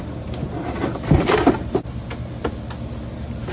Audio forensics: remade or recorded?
recorded